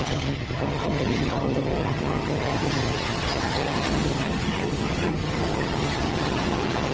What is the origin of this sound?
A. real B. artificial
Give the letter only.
B